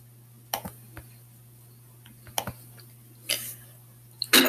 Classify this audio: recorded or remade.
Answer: recorded